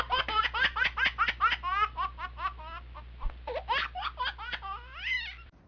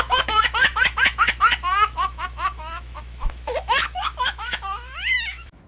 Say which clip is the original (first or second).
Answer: first